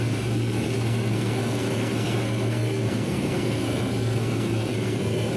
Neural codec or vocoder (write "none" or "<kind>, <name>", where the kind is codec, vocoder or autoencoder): codec, SNAC